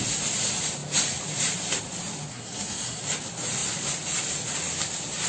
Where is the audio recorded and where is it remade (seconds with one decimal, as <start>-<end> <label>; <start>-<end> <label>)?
0.0-2.3 recorded; 2.3-3.0 remade; 3.0-5.3 recorded